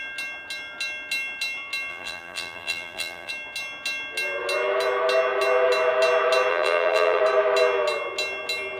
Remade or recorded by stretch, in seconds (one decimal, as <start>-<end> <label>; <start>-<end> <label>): 0.0-1.9 recorded; 1.9-3.3 remade; 3.3-6.5 recorded; 6.5-7.2 remade; 7.2-8.8 recorded